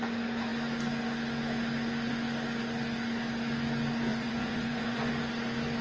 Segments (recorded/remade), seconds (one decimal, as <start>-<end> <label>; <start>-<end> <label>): 0.0-4.1 recorded; 4.1-5.1 remade; 5.1-5.8 recorded

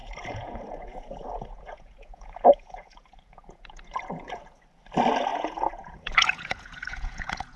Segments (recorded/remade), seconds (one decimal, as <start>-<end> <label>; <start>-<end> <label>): 0.0-4.6 remade; 4.6-5.3 recorded; 5.3-7.6 remade

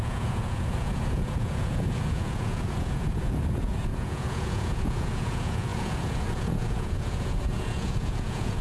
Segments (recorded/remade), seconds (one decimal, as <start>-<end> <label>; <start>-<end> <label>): 0.0-8.6 remade

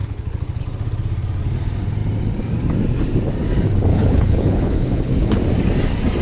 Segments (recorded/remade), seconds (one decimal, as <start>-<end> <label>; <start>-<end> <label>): 0.0-0.6 remade; 0.6-3.9 recorded; 3.9-5.3 remade; 5.3-6.2 recorded

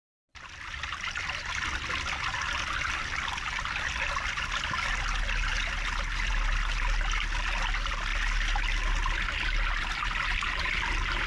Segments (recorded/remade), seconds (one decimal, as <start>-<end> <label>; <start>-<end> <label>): 0.0-11.3 recorded

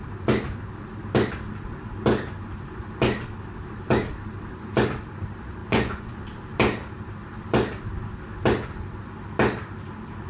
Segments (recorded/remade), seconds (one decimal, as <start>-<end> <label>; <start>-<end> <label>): 0.0-5.6 recorded; 5.6-6.2 remade; 6.2-10.3 recorded